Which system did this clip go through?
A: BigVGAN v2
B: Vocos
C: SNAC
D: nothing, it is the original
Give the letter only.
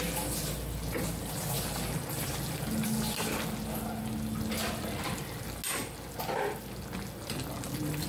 D